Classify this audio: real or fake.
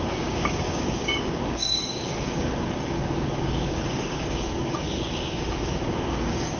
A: fake